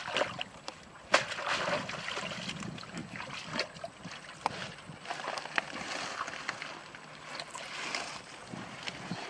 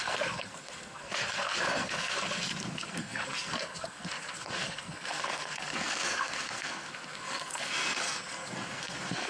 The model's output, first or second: second